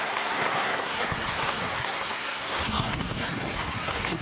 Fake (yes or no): yes